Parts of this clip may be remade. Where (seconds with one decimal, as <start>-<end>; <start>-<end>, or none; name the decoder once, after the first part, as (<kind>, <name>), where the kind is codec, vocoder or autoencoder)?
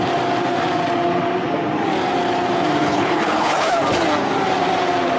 2.8-3.8 (codec, HILCodec)